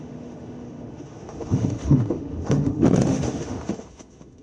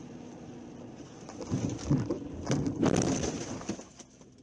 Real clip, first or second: second